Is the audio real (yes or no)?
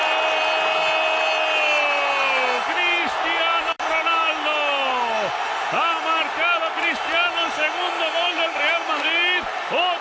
yes